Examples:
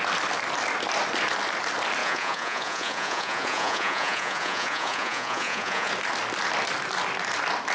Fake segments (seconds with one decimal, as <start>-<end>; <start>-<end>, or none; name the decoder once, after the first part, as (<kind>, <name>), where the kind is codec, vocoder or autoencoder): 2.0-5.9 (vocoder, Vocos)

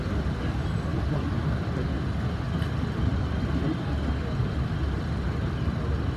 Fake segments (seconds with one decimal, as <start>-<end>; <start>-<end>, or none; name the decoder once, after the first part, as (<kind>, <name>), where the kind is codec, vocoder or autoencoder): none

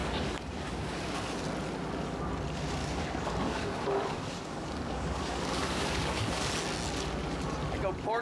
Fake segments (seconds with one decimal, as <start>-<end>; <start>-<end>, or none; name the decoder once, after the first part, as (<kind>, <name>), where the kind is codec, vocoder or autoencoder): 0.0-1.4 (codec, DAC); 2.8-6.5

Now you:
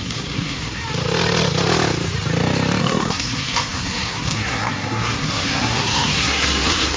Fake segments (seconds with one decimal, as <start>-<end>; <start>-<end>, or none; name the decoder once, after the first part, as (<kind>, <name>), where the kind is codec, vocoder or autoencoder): 0.0-0.8 (codec, SNAC); 2.8-7.0

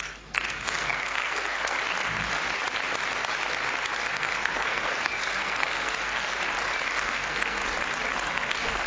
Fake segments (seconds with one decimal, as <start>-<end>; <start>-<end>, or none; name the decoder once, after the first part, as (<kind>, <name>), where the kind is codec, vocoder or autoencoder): 0.0-1.8 (codec, SNAC); 4.1-6.4; 6.9-7.6; 8.3-8.9